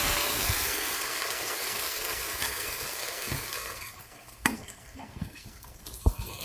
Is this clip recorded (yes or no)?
no